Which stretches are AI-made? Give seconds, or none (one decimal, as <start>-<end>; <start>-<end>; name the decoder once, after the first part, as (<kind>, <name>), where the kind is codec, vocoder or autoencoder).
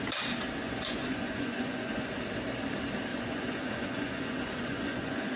0.6-2.1 (vocoder, Vocos); 3.1-5.4